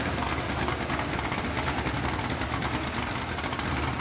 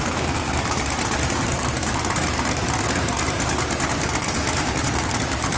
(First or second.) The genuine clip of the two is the first